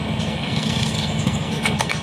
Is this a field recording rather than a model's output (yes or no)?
no